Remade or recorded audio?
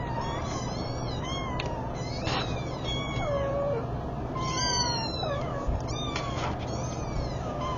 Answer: recorded